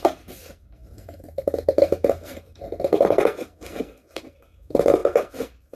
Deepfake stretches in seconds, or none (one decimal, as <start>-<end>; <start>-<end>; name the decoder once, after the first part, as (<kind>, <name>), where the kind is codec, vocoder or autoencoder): 0.0-5.7 (codec, SNAC)